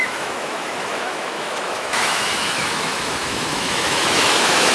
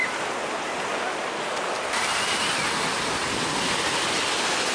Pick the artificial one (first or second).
first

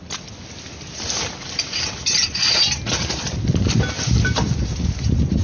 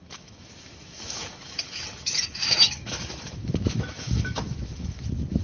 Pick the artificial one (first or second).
second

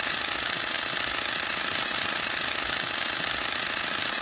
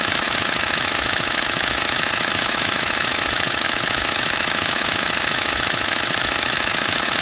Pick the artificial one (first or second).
second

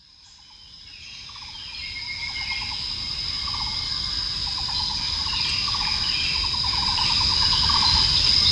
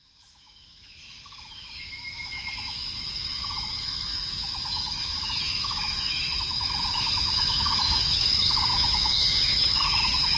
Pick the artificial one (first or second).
second